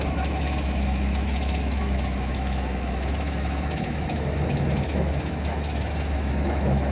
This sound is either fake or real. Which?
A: fake